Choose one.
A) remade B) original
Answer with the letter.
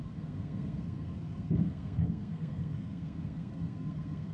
A